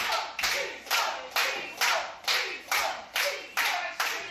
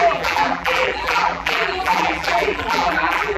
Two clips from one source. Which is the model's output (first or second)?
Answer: second